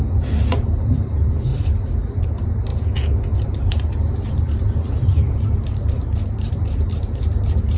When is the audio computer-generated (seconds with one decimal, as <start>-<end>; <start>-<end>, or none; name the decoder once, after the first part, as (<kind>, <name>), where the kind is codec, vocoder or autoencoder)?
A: 0.0-1.5 (vocoder, BigVGAN v2); 2.2-2.7; 3.4-7.8

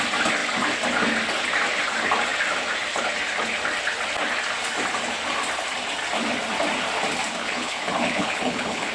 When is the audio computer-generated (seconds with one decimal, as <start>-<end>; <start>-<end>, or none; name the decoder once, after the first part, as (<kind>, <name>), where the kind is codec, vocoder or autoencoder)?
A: 7.4-8.9 (codec, HILCodec)

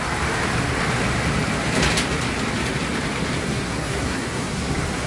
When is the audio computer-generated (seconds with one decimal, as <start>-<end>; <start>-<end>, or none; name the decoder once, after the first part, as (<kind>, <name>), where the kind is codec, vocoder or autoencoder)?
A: 3.4-5.1 (codec, SNAC)

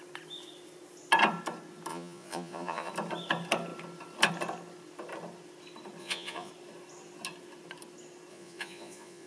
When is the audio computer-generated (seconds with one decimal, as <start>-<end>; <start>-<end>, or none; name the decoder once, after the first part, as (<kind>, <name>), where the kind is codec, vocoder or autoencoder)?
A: 1.9-2.9 (vocoder, Vocos); 6.0-6.5; 8.3-9.3

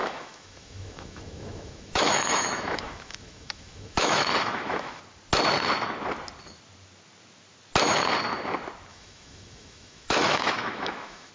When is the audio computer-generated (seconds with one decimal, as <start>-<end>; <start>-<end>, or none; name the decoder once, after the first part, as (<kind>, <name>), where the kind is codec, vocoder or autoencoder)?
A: 0.0-5.0 (autoencoder, DAC-VAE); 8.9-11.3